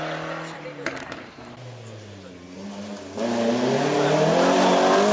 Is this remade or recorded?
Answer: recorded